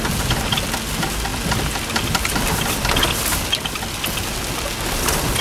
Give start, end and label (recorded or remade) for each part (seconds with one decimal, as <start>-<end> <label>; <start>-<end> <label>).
0.0-5.4 recorded